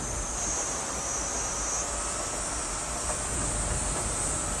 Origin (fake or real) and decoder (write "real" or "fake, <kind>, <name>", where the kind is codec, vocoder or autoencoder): real